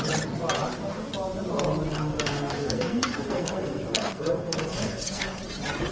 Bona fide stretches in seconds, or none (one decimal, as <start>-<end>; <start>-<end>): 0.0-1.9; 5.4-5.9